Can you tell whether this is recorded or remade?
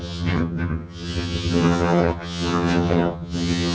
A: remade